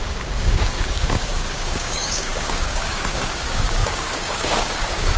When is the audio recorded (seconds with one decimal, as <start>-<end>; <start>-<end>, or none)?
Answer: none